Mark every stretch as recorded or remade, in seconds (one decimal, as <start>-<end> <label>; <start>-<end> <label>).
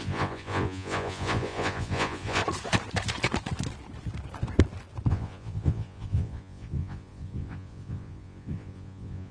0.0-2.4 remade; 2.4-5.1 recorded; 5.1-9.3 remade